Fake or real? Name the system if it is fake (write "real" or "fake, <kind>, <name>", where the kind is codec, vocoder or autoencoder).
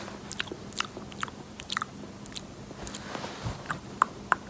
fake, vocoder, BigVGAN v2